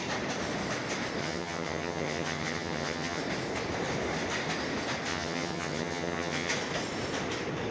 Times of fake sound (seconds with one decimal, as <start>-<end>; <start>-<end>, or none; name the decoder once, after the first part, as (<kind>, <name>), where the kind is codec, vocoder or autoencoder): 1.2-3.2 (vocoder, HiFi-GAN); 5.1-6.5